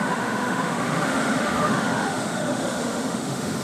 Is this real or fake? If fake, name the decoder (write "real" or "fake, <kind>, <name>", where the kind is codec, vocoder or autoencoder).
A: fake, autoencoder, DAC-VAE